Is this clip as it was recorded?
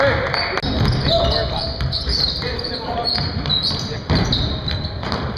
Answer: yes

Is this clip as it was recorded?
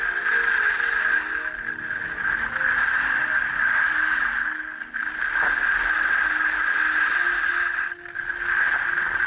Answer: yes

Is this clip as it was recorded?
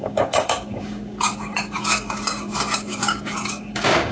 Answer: no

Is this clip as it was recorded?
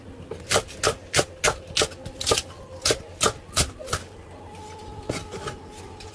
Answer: yes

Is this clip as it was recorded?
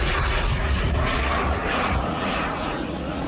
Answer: no